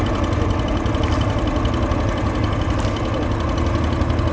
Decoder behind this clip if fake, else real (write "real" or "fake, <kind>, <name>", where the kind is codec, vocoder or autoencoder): real